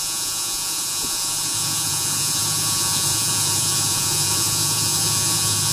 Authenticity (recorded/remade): remade